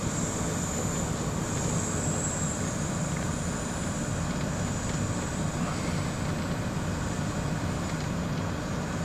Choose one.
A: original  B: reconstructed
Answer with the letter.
A